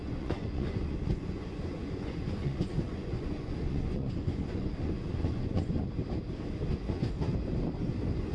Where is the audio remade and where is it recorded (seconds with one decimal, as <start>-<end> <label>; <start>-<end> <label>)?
0.0-5.8 remade; 5.8-6.7 recorded; 6.7-7.3 remade; 7.3-8.3 recorded